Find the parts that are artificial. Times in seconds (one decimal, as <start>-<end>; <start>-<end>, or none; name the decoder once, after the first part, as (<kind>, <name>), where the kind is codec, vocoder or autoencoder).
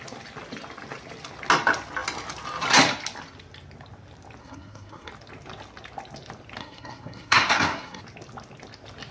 4.4-5.1 (codec, SNAC); 6.6-8.0